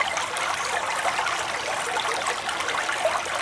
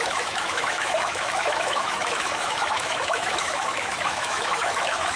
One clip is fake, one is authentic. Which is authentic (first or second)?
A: first